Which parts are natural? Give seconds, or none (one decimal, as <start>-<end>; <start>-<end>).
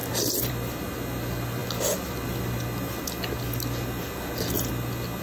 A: 0.0-5.2